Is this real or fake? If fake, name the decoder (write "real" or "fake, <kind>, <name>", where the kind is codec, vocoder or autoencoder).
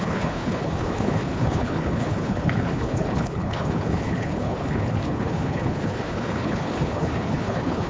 fake, codec, HILCodec